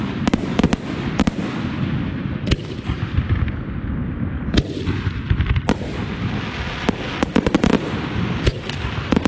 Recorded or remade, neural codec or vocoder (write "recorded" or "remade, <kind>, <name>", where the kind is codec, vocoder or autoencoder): recorded